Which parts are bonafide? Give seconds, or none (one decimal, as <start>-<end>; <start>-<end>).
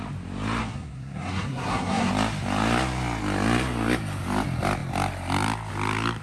0.0-0.6; 2.1-6.2